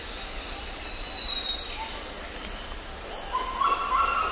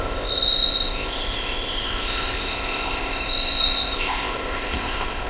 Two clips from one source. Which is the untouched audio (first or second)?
first